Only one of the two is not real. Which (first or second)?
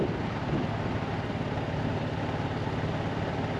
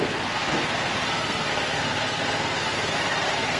second